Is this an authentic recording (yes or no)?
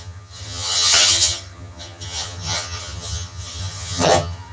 no